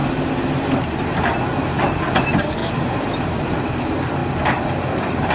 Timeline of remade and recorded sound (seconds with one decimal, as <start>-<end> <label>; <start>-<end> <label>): 0.0-2.6 recorded; 2.6-3.6 remade; 3.6-5.3 recorded

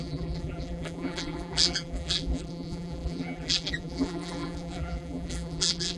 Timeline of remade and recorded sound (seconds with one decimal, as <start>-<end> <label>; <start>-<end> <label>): 0.0-6.0 remade